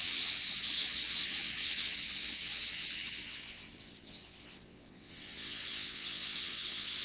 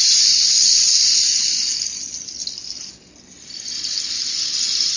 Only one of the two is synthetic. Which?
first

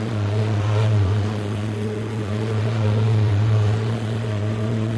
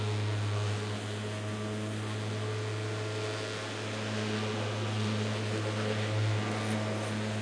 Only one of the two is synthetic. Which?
first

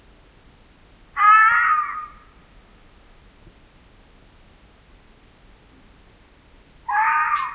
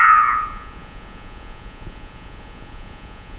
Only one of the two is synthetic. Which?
second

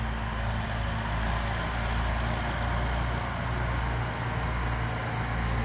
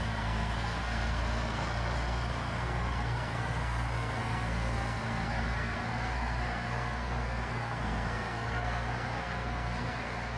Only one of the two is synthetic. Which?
second